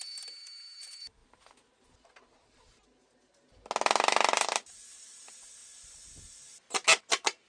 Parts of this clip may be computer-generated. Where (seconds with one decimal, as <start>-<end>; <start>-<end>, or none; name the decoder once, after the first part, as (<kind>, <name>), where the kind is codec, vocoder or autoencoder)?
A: none